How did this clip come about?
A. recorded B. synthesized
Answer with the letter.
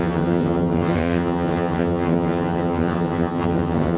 B